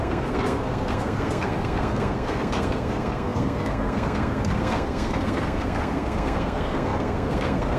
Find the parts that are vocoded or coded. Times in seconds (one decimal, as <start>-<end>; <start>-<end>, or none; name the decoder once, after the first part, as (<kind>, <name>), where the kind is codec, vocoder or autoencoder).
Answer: 0.0-7.8 (codec, SNAC)